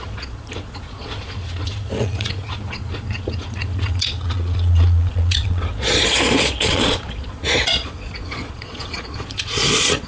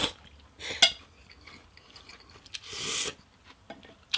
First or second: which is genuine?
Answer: second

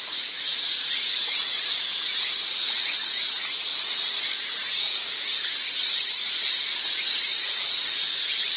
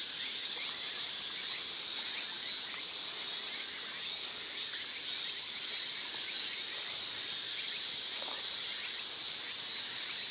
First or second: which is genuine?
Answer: second